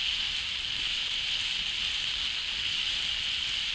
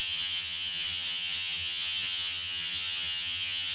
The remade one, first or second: second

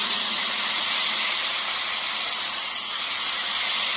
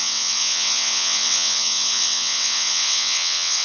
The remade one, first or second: second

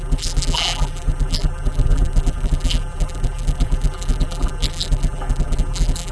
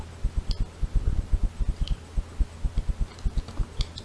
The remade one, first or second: first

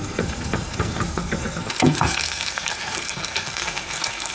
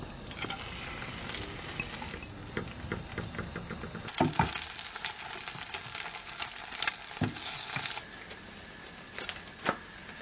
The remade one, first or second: first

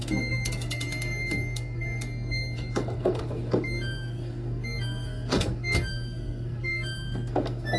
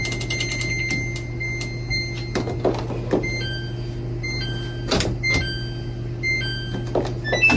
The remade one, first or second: first